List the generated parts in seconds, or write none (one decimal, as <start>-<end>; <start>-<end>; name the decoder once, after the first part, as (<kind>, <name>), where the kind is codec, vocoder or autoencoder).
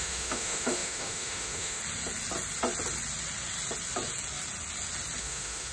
0.0-1.8 (autoencoder, DAC-VAE); 5.2-5.7